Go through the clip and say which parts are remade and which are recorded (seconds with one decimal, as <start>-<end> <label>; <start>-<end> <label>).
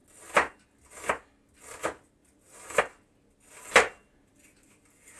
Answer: 0.0-2.2 recorded; 2.2-2.8 remade; 2.8-5.2 recorded